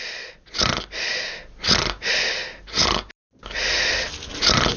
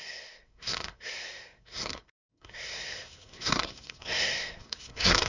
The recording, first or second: first